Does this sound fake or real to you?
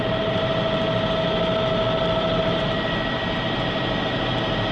real